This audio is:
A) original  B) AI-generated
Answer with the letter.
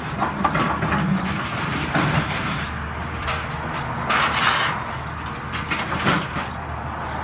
A